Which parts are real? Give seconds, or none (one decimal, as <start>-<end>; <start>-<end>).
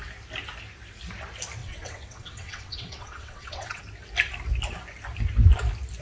0.0-1.6; 3.8-6.0